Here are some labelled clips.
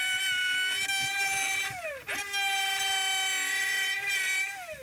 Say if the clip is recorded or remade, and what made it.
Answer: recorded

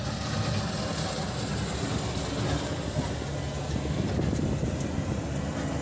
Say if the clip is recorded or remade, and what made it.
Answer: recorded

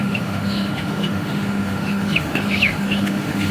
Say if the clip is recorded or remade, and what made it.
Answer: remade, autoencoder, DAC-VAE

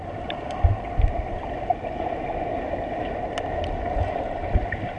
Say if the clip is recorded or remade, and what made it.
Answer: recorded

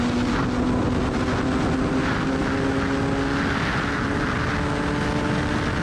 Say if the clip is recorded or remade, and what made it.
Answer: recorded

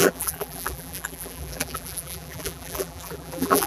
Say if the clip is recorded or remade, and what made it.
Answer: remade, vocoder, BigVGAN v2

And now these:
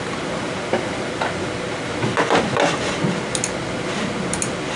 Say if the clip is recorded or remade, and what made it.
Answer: recorded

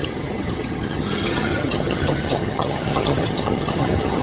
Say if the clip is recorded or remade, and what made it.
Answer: remade, vocoder, HiFi-GAN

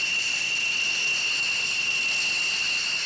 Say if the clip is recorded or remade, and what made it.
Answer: recorded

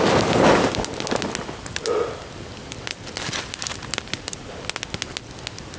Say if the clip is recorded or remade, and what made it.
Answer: recorded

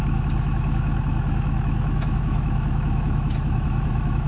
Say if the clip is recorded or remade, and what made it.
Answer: remade, autoencoder, DAC-VAE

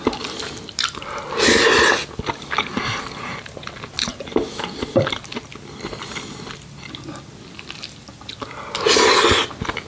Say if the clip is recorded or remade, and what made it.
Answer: recorded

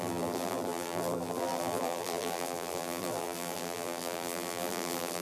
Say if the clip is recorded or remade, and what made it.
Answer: remade, vocoder, BigVGAN v2